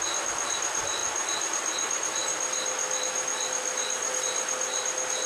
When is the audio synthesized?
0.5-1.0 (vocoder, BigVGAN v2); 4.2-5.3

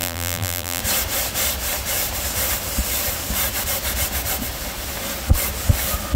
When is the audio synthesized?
0.0-0.8 (vocoder, BigVGAN v2)

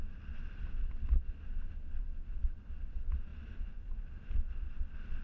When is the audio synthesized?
none

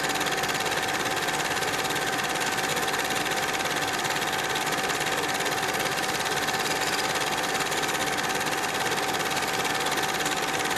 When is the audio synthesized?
2.7-3.2 (vocoder, BigVGAN v2); 5.9-6.7

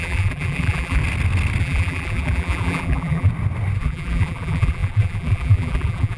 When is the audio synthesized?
0.0-1.0 (vocoder, BigVGAN v2); 1.6-3.3; 3.8-6.2